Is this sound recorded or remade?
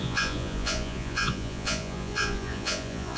remade